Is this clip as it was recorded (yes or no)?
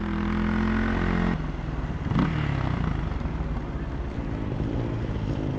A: yes